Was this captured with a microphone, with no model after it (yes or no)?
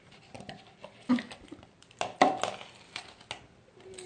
yes